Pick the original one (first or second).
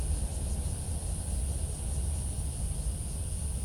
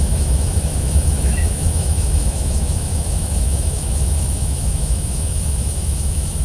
first